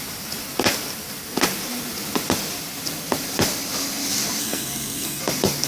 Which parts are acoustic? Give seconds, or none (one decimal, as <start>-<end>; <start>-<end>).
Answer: 0.0-4.4; 5.2-5.7